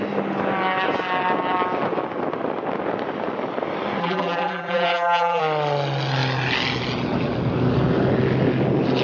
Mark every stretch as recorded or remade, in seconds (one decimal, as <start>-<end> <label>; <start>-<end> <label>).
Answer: 0.0-4.0 recorded; 4.0-5.4 remade; 5.4-9.0 recorded